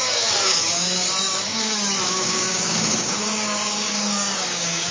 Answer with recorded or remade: remade